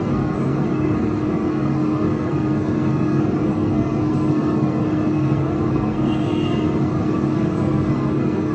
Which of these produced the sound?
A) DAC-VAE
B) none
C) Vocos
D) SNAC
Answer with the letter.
D